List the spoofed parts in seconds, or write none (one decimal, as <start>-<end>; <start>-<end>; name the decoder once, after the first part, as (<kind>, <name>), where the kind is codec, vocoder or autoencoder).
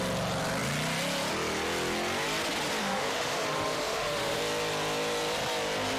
2.8-4.4 (autoencoder, DAC-VAE)